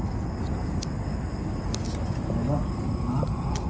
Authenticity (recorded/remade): recorded